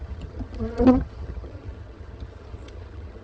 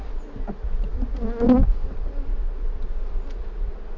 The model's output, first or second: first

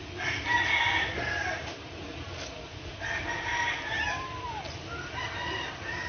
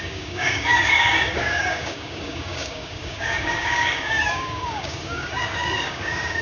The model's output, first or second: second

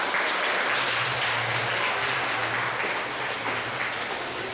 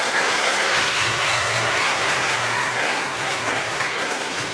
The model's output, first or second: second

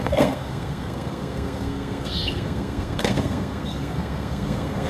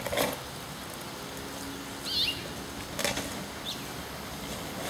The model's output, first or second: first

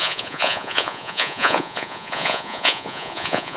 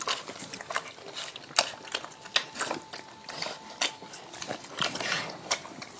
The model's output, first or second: first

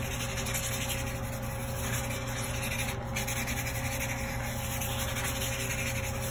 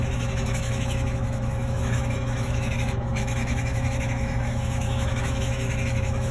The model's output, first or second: second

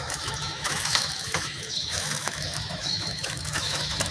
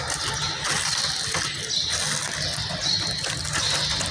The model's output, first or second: first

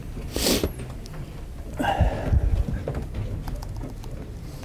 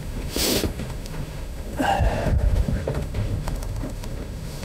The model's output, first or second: second